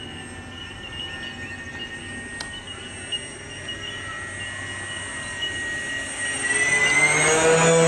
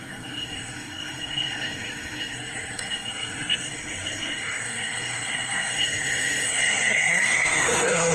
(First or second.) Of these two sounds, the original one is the first